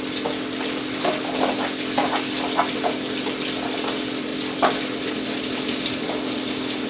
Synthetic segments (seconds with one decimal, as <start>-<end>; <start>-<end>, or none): none